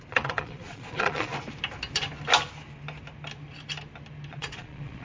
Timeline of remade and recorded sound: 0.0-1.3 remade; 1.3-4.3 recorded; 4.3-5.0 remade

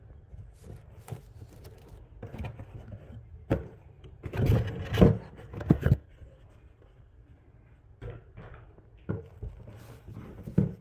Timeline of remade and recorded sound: 0.0-5.5 recorded; 5.5-6.1 remade; 6.1-10.8 recorded

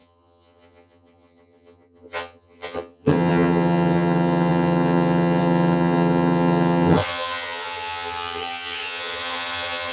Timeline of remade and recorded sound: 0.0-9.9 remade

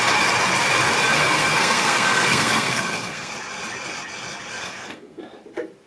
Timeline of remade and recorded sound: 0.0-1.1 recorded; 1.1-3.3 remade; 3.3-4.6 recorded; 4.6-5.2 remade; 5.2-5.9 recorded

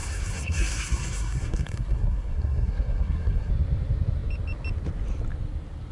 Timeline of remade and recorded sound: 0.0-3.5 remade; 3.5-5.9 recorded

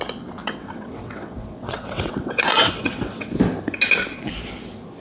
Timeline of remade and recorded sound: 0.0-0.4 recorded; 0.4-3.4 remade; 3.4-5.0 recorded

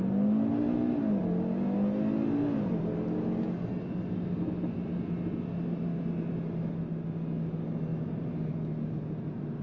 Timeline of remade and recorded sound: 0.0-9.6 recorded

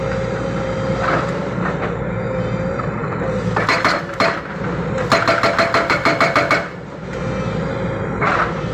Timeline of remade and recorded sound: 0.0-8.7 recorded